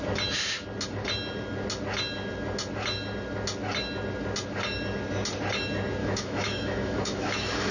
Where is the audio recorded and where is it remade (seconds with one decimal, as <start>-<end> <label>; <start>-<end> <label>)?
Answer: 0.0-6.0 recorded; 6.0-7.7 remade